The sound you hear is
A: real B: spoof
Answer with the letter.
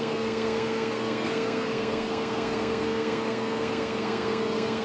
B